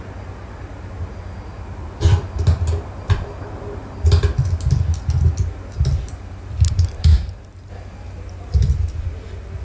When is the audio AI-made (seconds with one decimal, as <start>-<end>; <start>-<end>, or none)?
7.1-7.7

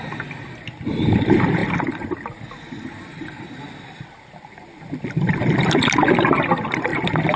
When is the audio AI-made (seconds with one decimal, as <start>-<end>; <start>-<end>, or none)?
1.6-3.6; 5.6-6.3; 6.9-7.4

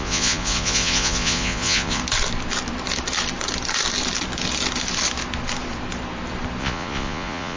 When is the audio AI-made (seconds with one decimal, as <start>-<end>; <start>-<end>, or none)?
0.0-2.0; 6.6-7.6

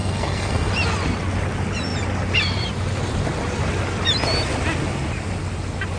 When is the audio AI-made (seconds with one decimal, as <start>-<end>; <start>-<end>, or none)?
0.0-0.7

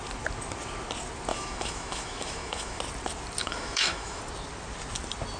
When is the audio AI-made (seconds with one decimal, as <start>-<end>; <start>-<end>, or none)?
1.3-2.8; 3.4-4.2

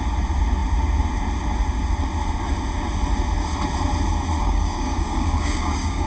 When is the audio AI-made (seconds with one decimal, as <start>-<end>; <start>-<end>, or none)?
4.4-6.1